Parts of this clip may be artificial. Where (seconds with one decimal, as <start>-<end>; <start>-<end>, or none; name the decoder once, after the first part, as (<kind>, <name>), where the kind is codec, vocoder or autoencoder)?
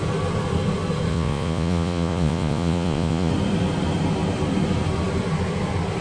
1.1-3.3 (vocoder, Vocos)